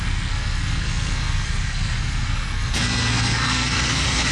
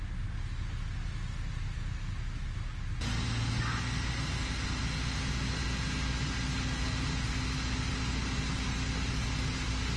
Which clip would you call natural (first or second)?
second